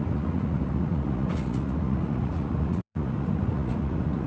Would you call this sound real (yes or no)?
no